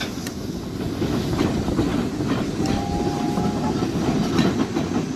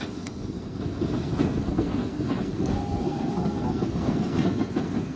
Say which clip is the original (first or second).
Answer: first